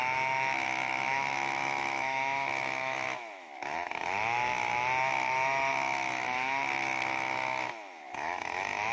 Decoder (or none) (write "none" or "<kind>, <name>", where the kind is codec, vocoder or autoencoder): autoencoder, DAC-VAE